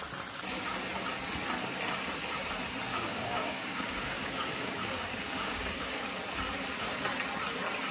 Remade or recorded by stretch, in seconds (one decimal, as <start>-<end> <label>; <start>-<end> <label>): 0.0-2.9 recorded; 2.9-6.1 remade; 6.1-7.9 recorded